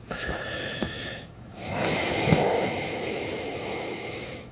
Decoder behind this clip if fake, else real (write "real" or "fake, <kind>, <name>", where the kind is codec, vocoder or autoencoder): fake, autoencoder, DAC-VAE